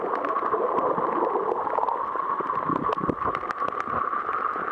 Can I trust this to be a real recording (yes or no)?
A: yes